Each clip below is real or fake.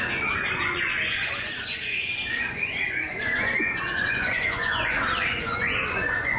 fake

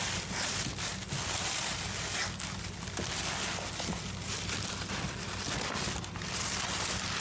real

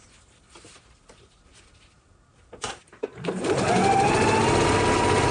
real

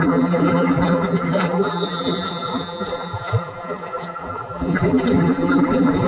fake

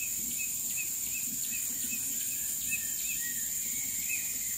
real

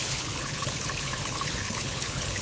fake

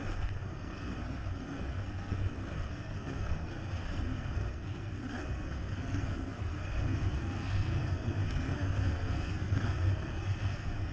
fake